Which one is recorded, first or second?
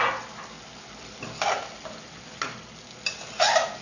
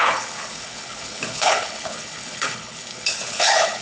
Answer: first